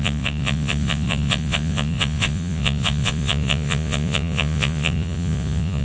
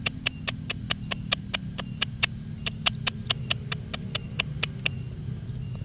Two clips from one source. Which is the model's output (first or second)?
first